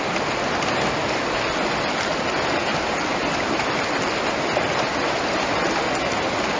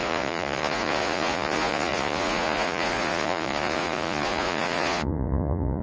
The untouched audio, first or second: first